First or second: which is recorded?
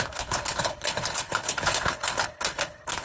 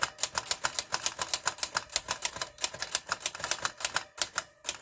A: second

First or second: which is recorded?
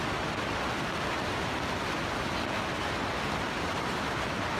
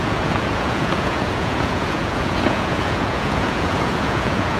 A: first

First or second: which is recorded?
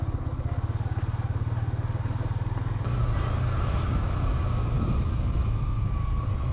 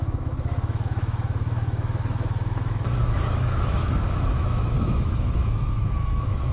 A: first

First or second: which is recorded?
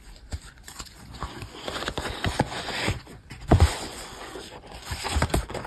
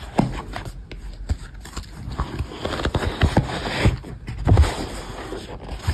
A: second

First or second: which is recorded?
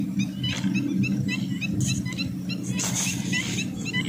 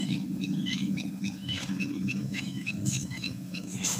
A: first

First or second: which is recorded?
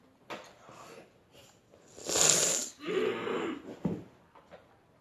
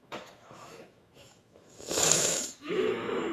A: first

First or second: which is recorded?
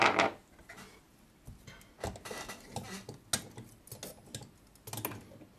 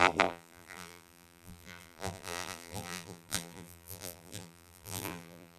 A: first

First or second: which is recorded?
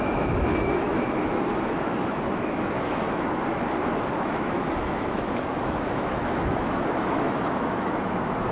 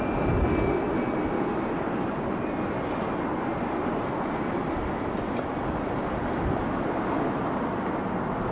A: second